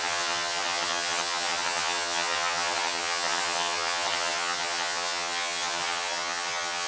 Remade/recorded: remade